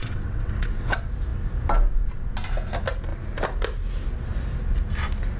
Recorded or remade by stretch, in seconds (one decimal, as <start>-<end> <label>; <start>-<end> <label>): 0.0-0.9 remade; 0.9-5.4 recorded